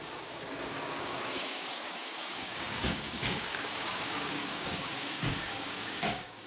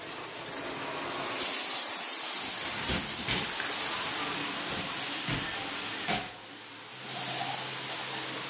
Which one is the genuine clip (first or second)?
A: second